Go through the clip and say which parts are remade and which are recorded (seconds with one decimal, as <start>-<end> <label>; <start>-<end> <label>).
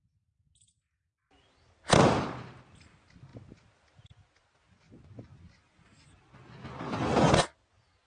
0.0-8.1 recorded